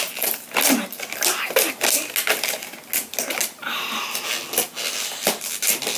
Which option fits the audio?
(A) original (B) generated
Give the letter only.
A